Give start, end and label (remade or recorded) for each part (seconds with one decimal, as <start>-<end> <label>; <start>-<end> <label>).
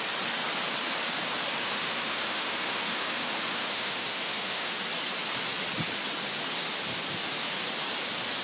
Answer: 0.0-1.6 recorded; 1.6-4.7 remade; 4.7-8.4 recorded